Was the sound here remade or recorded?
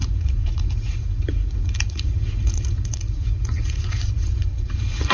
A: remade